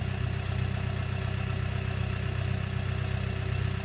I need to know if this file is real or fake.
real